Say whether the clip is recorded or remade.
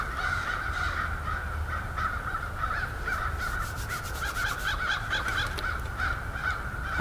recorded